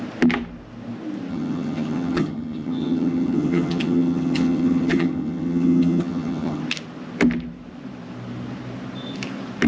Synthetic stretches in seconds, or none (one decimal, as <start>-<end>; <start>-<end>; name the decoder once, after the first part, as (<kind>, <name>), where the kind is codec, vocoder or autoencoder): 1.3-6.6 (vocoder, HiFi-GAN)